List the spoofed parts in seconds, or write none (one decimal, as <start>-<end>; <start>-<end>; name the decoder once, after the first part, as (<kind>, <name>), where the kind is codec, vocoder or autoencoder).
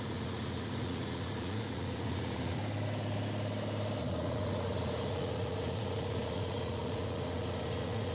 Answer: 0.0-2.6 (vocoder, Vocos); 4.0-8.1